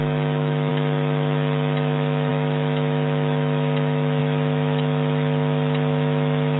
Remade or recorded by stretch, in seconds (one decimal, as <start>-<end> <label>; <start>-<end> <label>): 0.0-6.6 remade